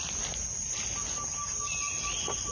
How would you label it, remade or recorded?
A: recorded